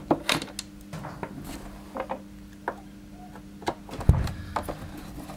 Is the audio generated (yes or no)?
no